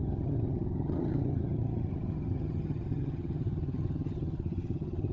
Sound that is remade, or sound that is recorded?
remade